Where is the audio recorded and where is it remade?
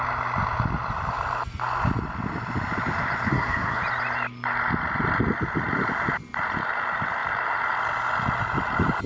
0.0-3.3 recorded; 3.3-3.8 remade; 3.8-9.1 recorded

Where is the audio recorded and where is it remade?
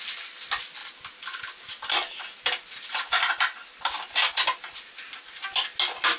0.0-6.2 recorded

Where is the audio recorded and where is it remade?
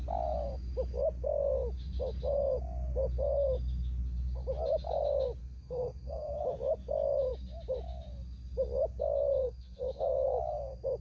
0.0-5.4 recorded; 5.4-6.4 remade; 6.4-9.4 recorded; 9.4-10.0 remade; 10.0-11.0 recorded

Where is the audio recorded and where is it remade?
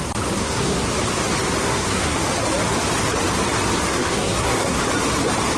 0.0-0.4 recorded; 0.4-0.9 remade; 0.9-1.6 recorded; 1.6-2.2 remade; 2.2-3.9 recorded; 3.9-4.8 remade; 4.8-5.6 recorded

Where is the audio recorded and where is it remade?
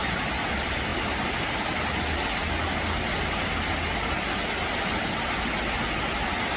0.0-6.6 recorded